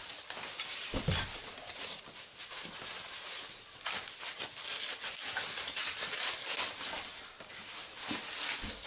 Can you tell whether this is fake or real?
real